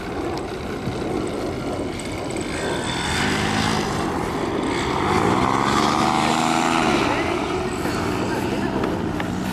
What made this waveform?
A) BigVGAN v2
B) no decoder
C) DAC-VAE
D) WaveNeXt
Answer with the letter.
B